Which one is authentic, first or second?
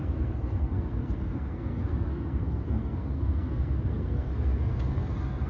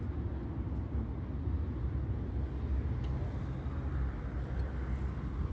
second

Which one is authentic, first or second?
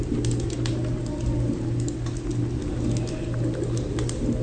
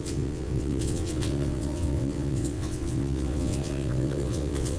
first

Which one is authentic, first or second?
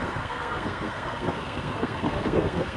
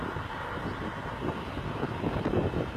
second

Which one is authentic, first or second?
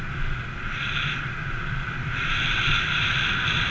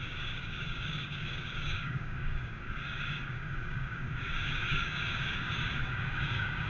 first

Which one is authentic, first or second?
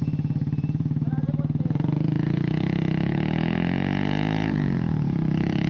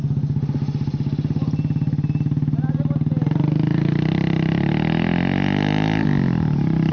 second